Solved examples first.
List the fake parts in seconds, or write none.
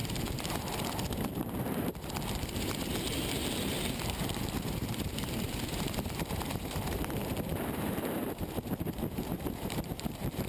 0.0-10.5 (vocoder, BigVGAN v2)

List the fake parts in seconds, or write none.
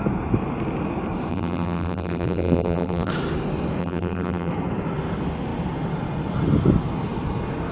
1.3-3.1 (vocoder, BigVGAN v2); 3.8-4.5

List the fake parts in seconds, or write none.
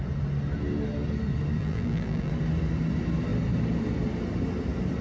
1.6-2.3 (vocoder, BigVGAN v2)